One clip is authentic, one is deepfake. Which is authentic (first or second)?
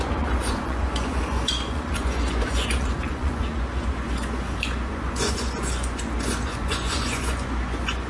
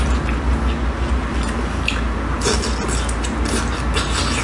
second